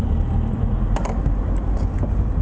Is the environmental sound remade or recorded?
recorded